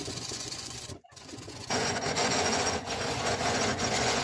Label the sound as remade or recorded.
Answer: remade